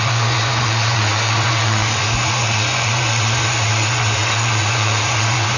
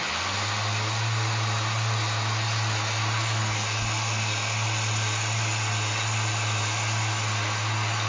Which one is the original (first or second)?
second